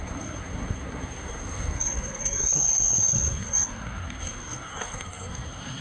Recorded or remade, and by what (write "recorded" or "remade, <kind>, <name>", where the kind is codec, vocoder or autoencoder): remade, codec, SNAC